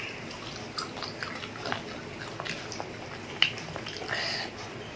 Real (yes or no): yes